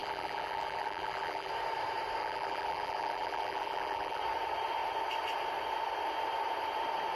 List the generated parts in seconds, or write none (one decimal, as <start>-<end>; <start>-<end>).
0.0-1.5; 2.2-4.2